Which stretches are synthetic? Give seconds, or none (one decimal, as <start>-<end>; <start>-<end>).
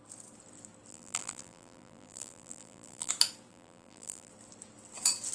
0.9-3.1; 3.5-4.3